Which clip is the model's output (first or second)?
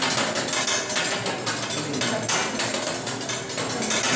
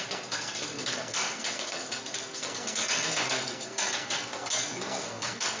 second